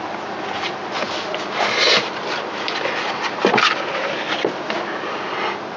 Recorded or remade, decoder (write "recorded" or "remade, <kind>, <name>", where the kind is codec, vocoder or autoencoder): recorded